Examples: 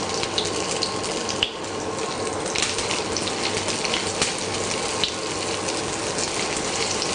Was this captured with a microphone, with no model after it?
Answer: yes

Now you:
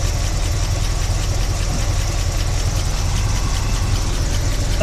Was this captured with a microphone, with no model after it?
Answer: yes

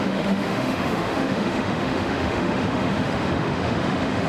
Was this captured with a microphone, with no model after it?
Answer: no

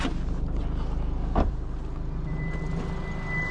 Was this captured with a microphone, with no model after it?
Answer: yes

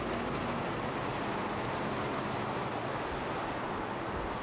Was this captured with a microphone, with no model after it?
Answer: yes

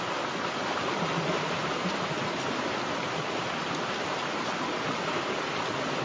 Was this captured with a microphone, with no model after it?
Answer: yes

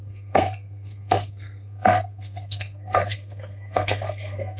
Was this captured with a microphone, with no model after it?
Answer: no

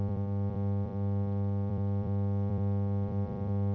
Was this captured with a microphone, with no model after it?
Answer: no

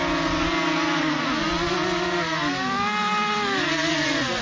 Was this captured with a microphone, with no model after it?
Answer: yes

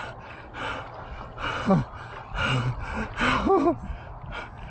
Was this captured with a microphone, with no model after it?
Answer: yes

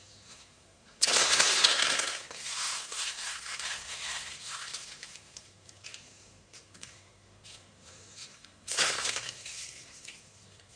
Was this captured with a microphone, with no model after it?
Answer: no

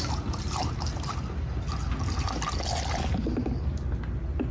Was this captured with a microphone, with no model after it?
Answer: yes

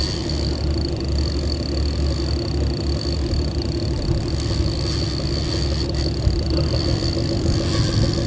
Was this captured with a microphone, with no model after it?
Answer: yes